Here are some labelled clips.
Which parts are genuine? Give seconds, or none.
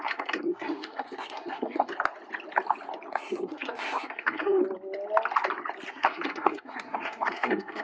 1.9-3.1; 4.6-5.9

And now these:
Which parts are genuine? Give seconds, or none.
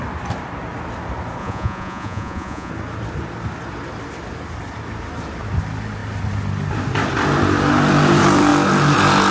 0.0-1.4; 2.7-9.3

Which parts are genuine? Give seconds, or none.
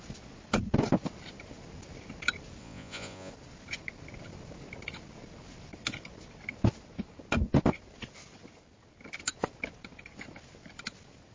0.0-2.6; 3.3-11.3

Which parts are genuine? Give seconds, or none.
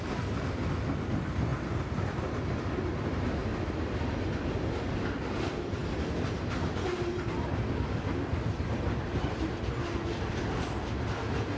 0.0-1.5; 2.4-11.6